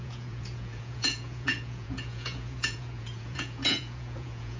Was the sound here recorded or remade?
remade